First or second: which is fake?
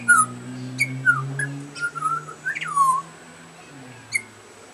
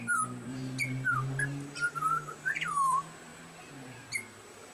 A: second